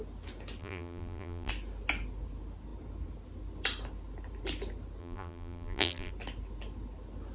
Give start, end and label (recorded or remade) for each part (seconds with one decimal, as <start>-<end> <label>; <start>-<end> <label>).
0.0-0.6 recorded; 0.6-1.5 remade; 1.5-5.0 recorded; 5.0-6.1 remade; 6.1-7.3 recorded

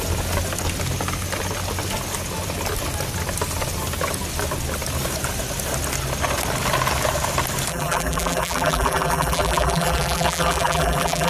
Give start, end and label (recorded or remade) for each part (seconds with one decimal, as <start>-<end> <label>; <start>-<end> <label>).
0.0-7.7 recorded; 7.7-11.3 remade